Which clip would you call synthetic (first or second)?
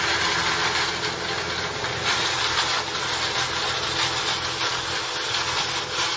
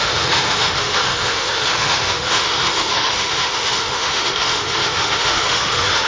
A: second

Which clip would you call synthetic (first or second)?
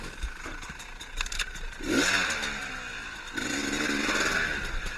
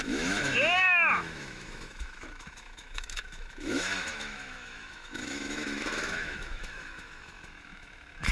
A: second